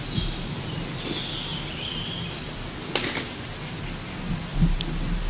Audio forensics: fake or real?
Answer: real